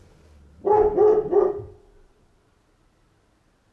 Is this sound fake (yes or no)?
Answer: no